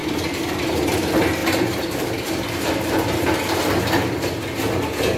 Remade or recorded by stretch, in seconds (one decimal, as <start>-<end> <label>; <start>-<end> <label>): 0.0-0.6 remade; 0.6-1.4 recorded; 1.4-3.7 remade; 3.7-5.2 recorded